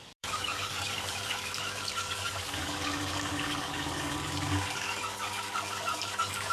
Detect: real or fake fake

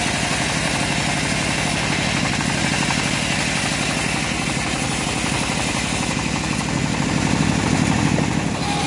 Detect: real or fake real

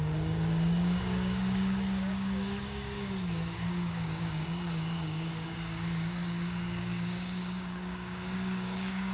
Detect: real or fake fake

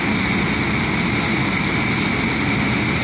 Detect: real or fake real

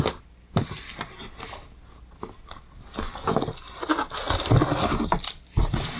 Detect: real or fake real